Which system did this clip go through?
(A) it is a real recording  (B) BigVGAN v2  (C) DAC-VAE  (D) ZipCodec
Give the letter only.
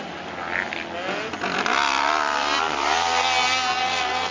A